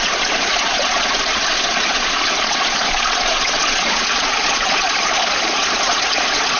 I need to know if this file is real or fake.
fake